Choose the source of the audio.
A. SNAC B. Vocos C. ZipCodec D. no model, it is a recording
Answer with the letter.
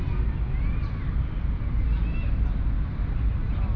D